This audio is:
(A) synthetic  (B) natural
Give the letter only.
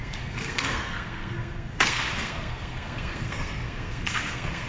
A